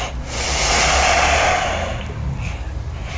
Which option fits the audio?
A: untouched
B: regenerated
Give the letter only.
A